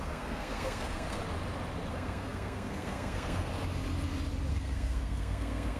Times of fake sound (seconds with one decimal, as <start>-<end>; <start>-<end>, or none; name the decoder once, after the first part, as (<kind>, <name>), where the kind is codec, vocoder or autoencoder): 0.0-1.2 (codec, SNAC); 1.9-3.5; 4.5-5.8